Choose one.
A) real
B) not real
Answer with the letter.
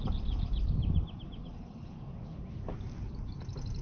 A